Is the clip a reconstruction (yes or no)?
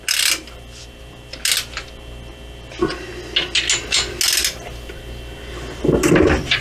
no